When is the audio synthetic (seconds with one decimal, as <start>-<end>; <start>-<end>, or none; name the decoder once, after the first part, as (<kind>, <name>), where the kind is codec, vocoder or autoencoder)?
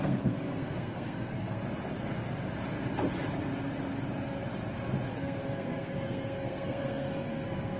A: 0.0-1.6 (codec, SNAC); 5.1-7.8